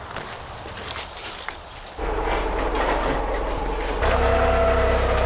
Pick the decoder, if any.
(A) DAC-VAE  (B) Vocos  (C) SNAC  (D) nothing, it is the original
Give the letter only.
D